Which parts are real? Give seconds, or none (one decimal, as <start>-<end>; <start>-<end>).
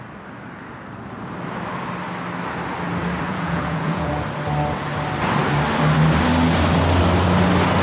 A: 0.0-3.3; 4.1-7.8